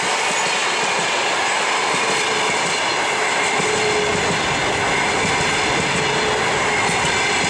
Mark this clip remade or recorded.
recorded